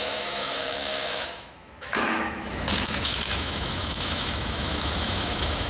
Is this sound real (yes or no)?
no